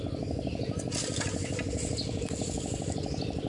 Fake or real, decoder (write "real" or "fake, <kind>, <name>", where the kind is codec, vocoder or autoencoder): real